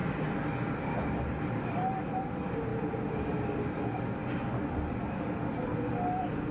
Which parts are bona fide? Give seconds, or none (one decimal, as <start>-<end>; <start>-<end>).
0.0-6.5